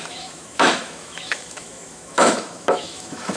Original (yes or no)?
no